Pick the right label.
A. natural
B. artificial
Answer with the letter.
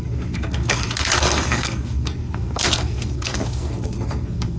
B